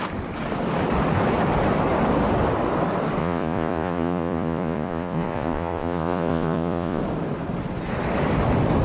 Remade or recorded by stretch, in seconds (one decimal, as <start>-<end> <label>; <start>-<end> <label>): 0.0-3.2 recorded; 3.2-7.0 remade; 7.0-8.8 recorded